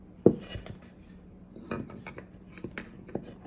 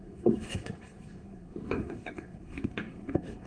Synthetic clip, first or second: second